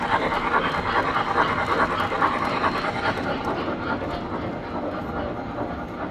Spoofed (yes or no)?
no